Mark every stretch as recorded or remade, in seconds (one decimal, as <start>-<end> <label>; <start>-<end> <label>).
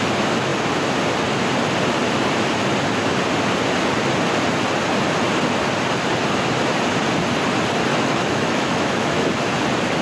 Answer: 0.0-7.9 recorded; 7.9-9.3 remade; 9.3-10.0 recorded